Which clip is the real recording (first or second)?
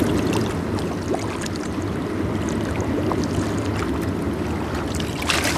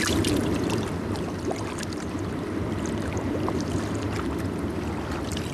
first